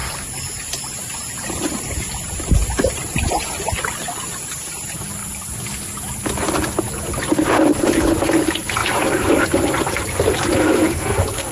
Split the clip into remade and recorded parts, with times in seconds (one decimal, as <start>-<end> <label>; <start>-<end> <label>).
0.0-10.6 recorded; 10.6-11.5 remade